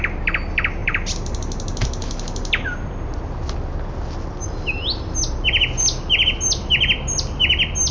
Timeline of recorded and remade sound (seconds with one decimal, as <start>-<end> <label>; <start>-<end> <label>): 0.0-7.9 recorded